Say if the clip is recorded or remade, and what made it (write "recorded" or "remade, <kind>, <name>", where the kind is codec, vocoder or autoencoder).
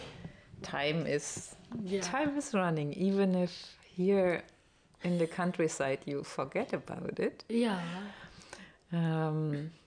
recorded